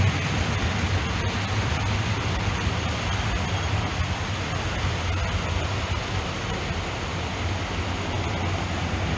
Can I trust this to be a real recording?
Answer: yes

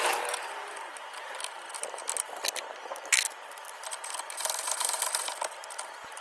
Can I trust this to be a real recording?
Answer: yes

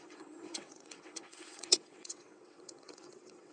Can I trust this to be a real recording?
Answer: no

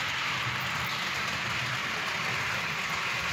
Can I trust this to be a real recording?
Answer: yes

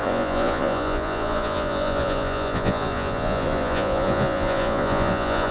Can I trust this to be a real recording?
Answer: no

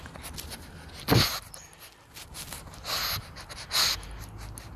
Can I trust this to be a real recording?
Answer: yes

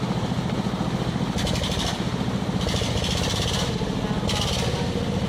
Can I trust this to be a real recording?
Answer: yes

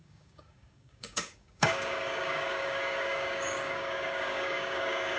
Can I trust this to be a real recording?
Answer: no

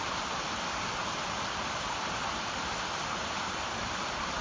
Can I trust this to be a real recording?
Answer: yes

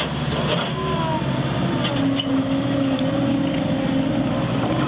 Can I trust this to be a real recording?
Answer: yes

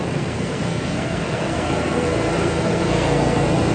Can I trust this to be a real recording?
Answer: no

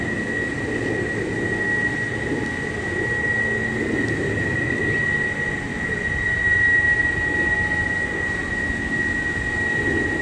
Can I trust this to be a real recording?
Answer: yes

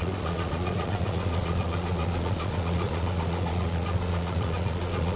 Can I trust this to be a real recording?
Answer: no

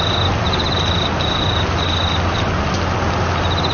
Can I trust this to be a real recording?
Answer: yes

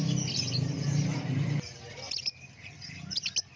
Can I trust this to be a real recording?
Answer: yes